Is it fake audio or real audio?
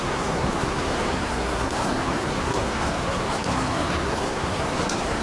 fake